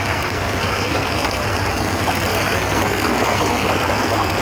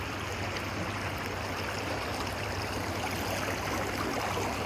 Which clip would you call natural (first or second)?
second